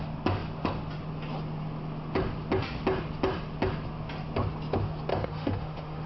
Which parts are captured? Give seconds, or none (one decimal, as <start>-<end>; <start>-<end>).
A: 0.0-5.1